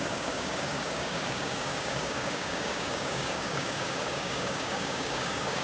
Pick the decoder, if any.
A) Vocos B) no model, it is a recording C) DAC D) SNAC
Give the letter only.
C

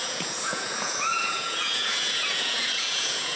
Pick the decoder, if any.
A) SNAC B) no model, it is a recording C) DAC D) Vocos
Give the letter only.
D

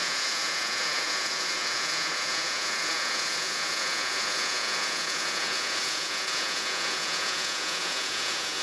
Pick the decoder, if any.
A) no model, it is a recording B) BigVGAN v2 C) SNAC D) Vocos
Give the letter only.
D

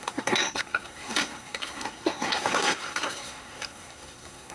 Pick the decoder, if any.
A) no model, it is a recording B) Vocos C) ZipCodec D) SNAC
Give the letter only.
D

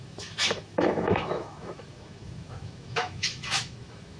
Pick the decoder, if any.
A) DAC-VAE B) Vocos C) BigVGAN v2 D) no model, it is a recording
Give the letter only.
A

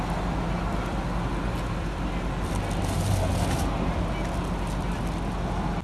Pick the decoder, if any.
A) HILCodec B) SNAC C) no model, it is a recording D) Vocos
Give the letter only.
C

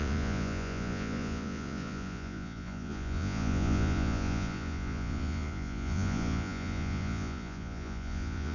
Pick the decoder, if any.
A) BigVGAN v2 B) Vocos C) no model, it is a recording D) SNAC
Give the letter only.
B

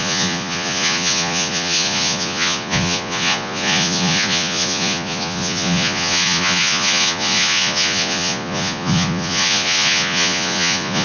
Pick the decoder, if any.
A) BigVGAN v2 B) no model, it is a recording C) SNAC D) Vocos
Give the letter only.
D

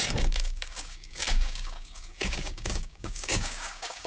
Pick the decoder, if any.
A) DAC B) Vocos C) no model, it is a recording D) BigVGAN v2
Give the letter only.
A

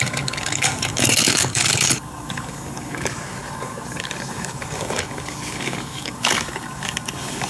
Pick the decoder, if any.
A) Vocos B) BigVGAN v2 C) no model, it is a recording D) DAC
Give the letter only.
D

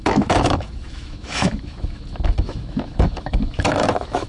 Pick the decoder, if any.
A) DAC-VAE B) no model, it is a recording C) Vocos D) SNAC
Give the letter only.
A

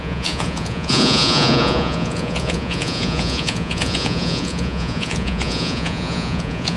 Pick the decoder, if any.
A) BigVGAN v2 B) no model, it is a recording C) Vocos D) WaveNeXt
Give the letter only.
C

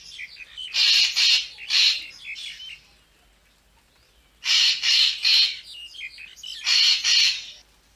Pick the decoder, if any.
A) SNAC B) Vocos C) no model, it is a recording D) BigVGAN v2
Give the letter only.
C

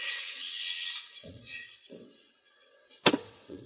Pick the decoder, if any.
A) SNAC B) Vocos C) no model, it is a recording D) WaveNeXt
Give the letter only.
D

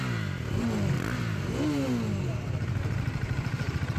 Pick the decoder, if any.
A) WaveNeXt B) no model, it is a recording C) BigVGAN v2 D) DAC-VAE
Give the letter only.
B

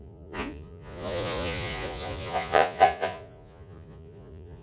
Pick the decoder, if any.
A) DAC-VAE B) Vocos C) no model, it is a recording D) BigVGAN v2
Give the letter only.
B